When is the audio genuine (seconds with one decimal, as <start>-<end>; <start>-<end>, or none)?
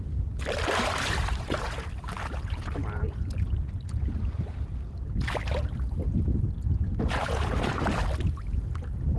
0.0-9.2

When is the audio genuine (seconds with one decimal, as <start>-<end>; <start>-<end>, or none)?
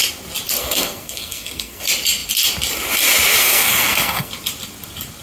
0.0-0.6; 1.8-3.4; 4.3-5.2